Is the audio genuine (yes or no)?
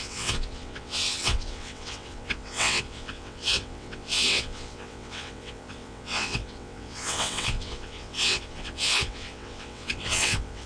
no